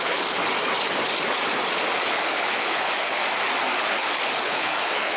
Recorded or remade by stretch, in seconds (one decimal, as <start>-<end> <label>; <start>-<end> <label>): 0.0-0.4 remade; 0.4-1.9 recorded; 1.9-3.2 remade; 3.2-3.8 recorded; 3.8-5.2 remade